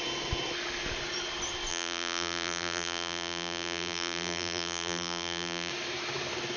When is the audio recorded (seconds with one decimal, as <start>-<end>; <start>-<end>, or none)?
0.0-1.7; 5.7-6.6